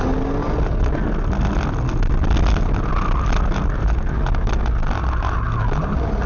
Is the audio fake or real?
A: real